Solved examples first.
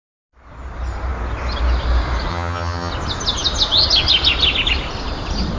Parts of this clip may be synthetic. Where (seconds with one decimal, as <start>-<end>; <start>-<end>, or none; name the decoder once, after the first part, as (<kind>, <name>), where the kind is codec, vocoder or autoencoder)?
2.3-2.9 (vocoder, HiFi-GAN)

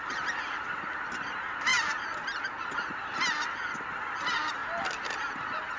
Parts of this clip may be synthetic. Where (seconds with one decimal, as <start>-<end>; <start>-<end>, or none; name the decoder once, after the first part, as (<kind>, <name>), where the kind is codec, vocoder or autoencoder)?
none

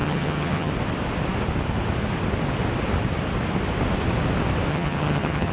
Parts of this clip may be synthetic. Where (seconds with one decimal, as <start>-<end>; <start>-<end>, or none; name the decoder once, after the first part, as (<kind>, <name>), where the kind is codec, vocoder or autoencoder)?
0.0-0.7 (vocoder, HiFi-GAN); 4.7-5.5

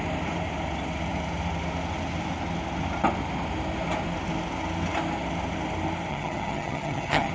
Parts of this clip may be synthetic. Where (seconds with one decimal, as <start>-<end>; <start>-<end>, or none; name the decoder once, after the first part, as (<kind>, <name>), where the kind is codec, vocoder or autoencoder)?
6.1-7.3 (vocoder, HiFi-GAN)